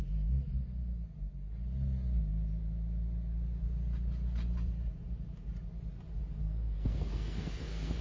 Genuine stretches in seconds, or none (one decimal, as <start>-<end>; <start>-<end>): 0.0-6.4

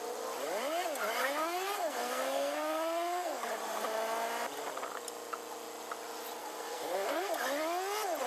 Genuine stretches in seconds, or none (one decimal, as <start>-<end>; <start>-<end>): 0.0-1.2; 3.5-6.4; 7.3-8.3

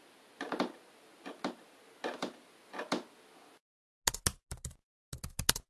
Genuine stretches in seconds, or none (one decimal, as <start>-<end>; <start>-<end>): 0.0-5.7

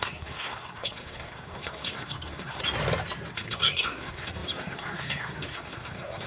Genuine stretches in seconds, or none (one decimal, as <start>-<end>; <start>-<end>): 2.6-3.3

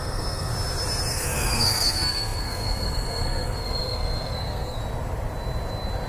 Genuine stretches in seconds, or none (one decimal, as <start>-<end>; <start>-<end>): 0.5-1.1; 4.8-6.1

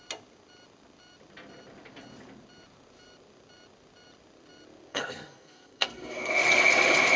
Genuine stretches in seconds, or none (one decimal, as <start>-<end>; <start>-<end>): 0.0-4.9; 6.3-7.2